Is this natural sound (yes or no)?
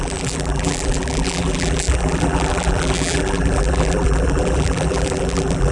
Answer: no